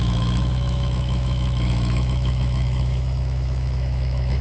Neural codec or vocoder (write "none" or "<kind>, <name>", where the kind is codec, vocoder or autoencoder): autoencoder, DAC-VAE